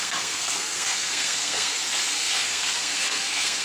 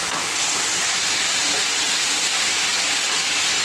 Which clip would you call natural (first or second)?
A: second